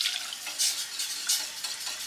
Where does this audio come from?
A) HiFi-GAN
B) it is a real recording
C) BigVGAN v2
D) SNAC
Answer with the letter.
B